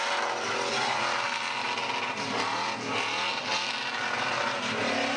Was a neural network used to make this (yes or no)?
no